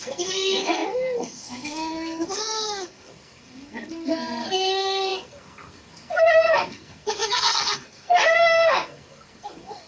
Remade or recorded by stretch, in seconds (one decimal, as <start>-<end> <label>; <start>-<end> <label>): 0.0-9.9 remade